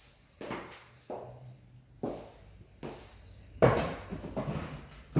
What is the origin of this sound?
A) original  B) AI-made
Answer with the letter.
A